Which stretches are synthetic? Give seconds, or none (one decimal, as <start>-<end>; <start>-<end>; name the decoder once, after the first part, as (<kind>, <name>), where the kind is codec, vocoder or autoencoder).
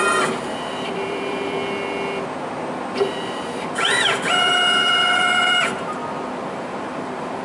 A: 0.0-1.6 (vocoder, BigVGAN v2); 3.0-6.0; 6.5-7.4